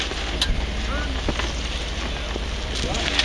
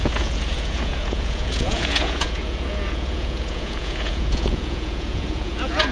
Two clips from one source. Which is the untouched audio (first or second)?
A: first